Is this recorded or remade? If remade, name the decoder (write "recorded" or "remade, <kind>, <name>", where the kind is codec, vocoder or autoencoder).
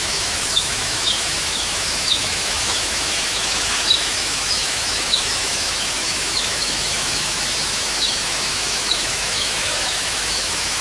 remade, autoencoder, DAC-VAE